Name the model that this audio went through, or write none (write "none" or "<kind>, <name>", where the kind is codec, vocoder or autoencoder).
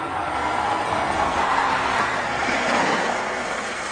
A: codec, SNAC